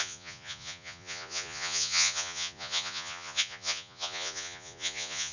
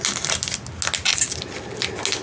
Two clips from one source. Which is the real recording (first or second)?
second